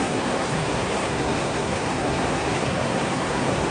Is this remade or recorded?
remade